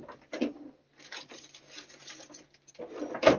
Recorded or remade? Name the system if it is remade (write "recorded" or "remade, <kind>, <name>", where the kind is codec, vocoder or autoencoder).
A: recorded